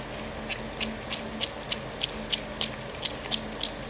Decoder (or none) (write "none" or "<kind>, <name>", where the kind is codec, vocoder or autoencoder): none